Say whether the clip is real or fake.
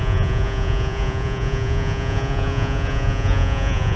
fake